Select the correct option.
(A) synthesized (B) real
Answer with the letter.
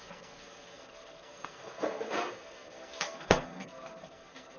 A